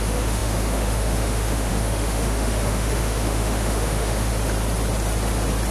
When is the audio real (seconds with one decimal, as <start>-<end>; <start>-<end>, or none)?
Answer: 4.3-5.7